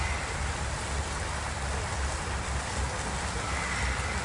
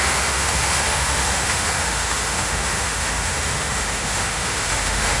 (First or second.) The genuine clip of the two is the first